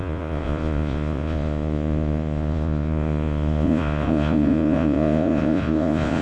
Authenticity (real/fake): fake